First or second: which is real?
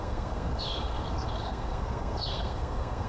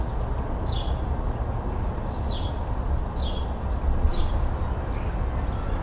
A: second